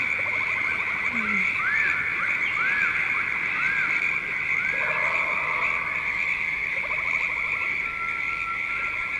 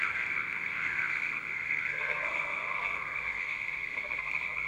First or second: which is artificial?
second